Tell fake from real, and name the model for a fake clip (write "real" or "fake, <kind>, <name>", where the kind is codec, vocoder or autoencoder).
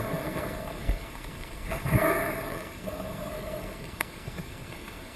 fake, codec, SNAC